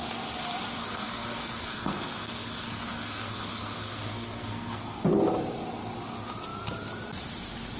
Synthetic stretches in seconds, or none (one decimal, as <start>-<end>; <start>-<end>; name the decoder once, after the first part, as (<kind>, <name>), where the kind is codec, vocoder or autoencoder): 0.8-5.1 (codec, SNAC)